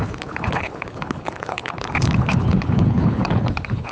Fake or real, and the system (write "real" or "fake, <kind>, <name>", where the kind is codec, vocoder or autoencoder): fake, codec, HILCodec